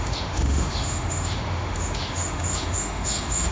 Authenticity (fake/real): fake